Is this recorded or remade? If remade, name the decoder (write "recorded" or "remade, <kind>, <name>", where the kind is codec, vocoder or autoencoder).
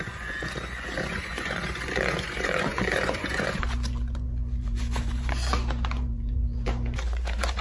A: remade, vocoder, Vocos